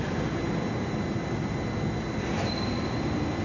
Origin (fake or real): real